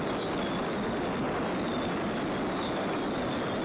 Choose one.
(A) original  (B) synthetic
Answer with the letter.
A